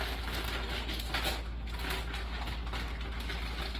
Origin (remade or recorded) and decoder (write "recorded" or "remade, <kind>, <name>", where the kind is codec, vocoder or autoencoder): recorded